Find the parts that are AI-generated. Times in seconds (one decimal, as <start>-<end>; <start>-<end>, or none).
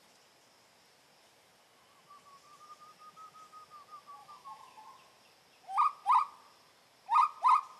4.2-4.8